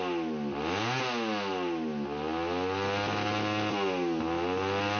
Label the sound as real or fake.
real